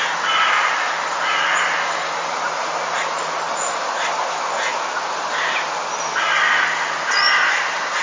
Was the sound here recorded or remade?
recorded